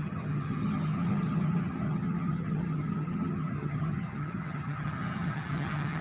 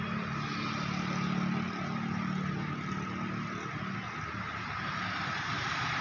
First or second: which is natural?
second